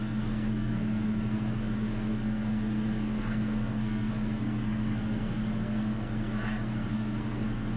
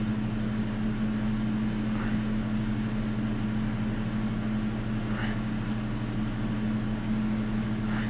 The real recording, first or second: second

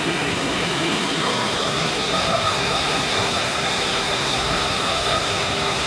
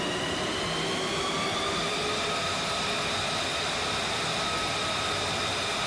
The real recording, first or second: second